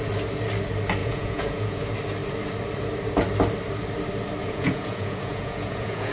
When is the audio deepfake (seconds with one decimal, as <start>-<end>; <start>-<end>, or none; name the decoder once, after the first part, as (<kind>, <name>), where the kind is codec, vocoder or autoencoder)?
1.0-1.8 (vocoder, Vocos); 4.4-6.1